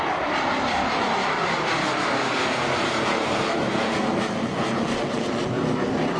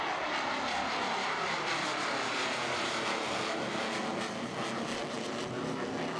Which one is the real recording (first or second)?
second